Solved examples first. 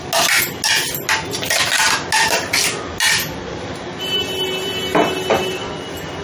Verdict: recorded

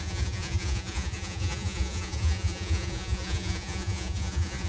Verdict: remade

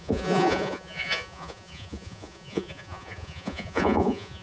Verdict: remade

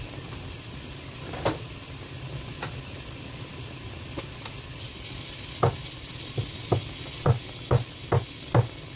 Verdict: recorded